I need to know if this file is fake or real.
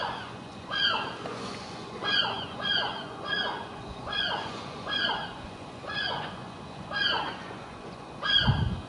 fake